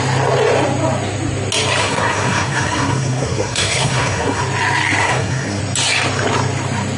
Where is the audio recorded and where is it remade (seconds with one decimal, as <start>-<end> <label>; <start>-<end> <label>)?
0.0-1.8 recorded; 1.8-4.4 remade; 4.4-5.0 recorded; 5.0-5.6 remade; 5.6-7.0 recorded